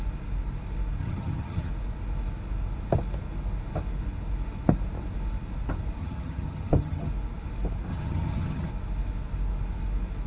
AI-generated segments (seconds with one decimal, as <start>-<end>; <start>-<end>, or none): 1.0-1.7; 6.0-7.1; 7.9-8.7